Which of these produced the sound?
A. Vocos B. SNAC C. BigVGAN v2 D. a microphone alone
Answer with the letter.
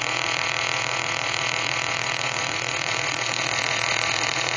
A